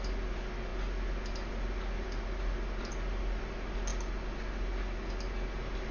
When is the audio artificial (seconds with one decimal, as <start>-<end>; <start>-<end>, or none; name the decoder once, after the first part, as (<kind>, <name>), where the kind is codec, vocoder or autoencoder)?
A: none